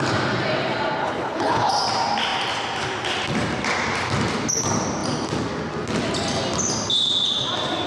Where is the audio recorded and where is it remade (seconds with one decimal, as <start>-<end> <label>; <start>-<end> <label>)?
0.0-1.0 recorded; 1.0-1.7 remade; 1.7-7.9 recorded